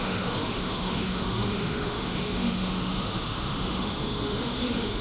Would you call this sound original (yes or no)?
no